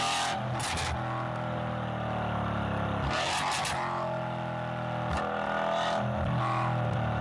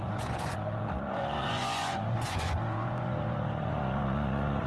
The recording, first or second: first